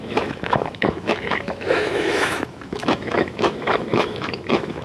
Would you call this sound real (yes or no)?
no